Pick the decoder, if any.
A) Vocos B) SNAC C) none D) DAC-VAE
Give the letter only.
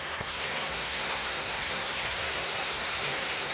B